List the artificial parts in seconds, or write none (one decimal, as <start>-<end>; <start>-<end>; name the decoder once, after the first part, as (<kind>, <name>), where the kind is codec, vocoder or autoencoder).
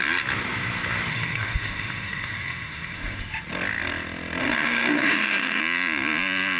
1.1-3.2 (autoencoder, DAC-VAE); 4.4-5.6